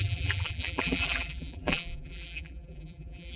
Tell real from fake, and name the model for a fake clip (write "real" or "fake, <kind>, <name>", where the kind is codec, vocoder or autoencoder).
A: fake, vocoder, BigVGAN v2